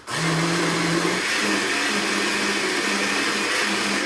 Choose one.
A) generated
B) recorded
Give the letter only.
B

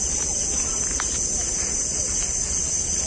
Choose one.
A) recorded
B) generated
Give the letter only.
A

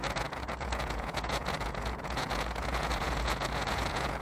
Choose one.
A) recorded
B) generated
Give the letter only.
B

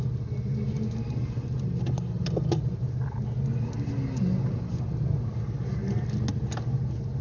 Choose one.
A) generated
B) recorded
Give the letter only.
B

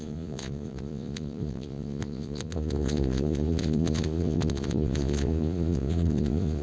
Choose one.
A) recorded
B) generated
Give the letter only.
B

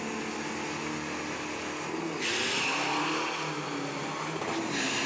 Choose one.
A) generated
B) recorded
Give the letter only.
B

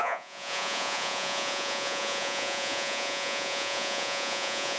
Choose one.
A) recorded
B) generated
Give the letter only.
B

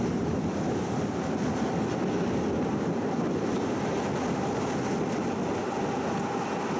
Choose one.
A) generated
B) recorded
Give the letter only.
B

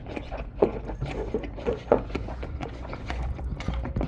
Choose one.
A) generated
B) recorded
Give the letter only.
A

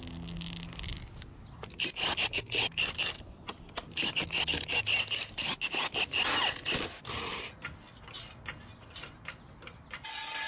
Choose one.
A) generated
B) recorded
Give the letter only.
B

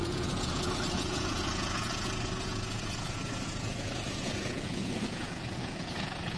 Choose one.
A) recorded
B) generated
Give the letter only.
B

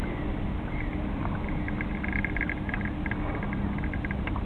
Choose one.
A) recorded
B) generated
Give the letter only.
A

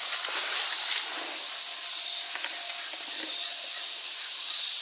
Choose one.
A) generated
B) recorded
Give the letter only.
B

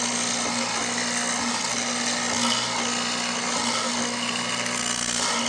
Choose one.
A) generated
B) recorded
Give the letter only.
B